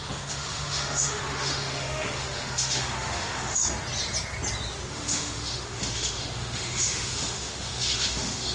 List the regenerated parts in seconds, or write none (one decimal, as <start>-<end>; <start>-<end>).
0.0-3.6; 4.9-8.5